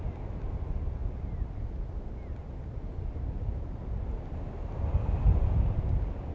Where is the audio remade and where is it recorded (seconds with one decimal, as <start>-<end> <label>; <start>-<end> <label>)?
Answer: 0.0-6.3 recorded